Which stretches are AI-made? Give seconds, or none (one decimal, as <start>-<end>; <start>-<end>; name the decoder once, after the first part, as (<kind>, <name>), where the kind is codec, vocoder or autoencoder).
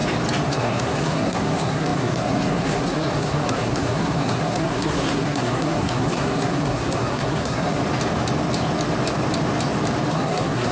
0.5-7.8 (codec, SNAC); 10.1-10.7